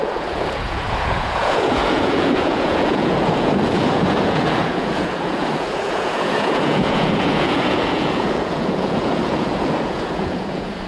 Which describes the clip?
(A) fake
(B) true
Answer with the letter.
A